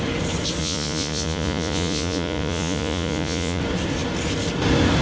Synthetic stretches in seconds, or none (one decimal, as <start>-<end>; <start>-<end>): 0.6-3.6